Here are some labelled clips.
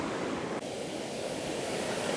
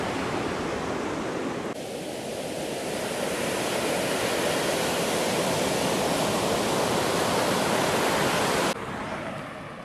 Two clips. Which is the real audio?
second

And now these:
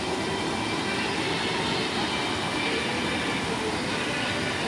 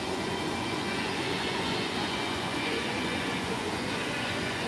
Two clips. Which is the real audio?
first